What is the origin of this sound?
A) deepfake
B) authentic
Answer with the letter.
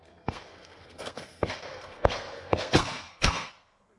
A